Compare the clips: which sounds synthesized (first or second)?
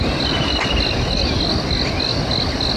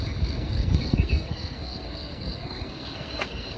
second